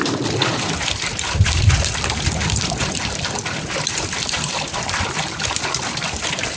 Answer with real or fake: fake